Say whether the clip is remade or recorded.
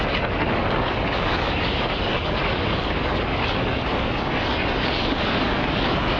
remade